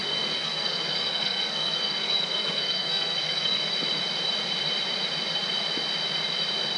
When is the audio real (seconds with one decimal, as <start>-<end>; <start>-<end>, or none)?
3.6-6.8